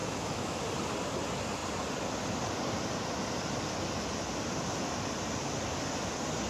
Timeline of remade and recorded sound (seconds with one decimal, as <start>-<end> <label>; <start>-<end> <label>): 0.0-0.6 remade; 0.6-6.5 recorded